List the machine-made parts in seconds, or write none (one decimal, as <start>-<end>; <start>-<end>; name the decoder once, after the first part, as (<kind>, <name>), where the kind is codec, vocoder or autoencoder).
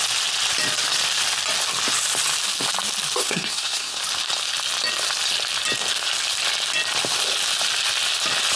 3.2-4.0 (codec, SNAC)